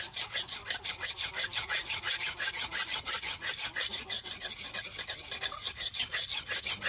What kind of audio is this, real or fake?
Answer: real